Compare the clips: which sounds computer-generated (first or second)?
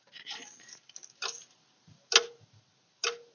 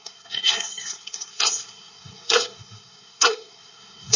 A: second